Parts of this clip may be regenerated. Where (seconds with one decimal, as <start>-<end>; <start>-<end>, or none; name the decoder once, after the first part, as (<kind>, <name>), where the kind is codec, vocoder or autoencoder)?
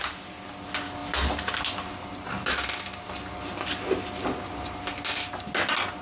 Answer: none